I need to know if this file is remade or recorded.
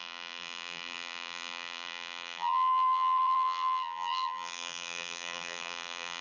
remade